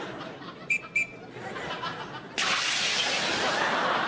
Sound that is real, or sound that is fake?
real